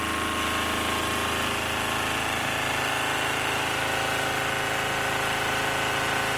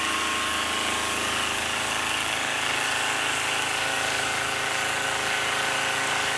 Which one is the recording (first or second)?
first